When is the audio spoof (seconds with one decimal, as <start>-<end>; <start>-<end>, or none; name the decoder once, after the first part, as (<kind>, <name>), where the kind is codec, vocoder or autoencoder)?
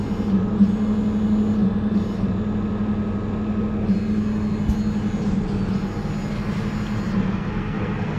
7.3-8.2 (codec, SNAC)